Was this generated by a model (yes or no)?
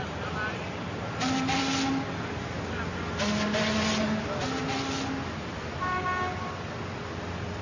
no